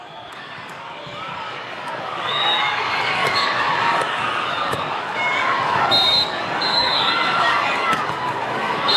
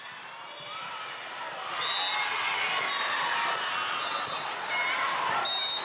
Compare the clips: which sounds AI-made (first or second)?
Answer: first